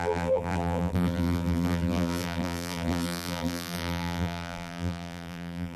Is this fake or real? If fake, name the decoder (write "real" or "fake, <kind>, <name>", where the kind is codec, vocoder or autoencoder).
fake, vocoder, BigVGAN v2